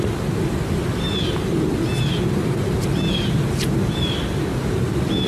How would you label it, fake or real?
real